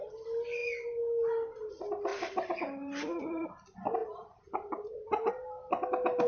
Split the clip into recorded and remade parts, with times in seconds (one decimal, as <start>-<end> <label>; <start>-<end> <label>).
0.0-2.1 recorded; 2.1-3.5 remade; 3.5-4.0 recorded; 4.0-5.3 remade; 5.3-6.3 recorded